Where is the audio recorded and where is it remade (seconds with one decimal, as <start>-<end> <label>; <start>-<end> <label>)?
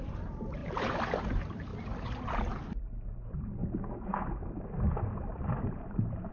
0.0-0.6 remade; 0.6-1.2 recorded; 1.2-1.7 remade; 1.7-2.8 recorded; 2.8-3.6 remade; 3.6-5.6 recorded; 5.6-6.3 remade